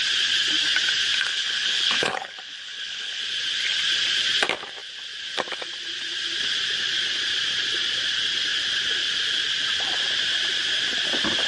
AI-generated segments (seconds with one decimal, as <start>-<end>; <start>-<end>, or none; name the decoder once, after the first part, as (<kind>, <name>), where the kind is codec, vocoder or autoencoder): 1.3-3.2 (codec, HILCodec)